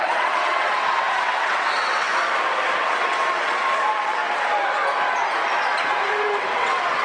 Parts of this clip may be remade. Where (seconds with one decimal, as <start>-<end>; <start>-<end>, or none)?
0.0-2.1; 2.8-4.2; 5.9-7.0